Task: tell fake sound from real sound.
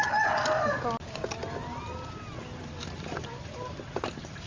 real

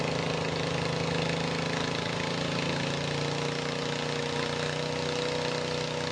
real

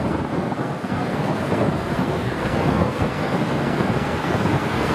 fake